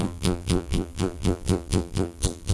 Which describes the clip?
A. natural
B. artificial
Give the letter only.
B